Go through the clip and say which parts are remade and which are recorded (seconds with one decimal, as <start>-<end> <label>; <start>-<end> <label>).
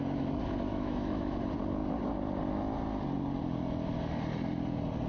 0.0-0.7 recorded; 0.7-1.4 remade; 1.4-5.1 recorded